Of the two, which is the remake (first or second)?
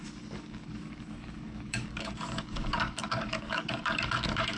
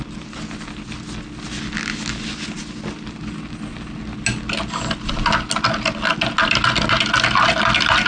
first